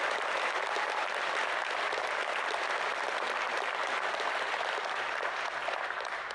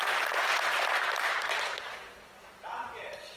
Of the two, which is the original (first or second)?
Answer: first